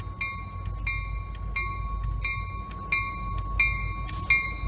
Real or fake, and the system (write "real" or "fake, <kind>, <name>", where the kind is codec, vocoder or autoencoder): real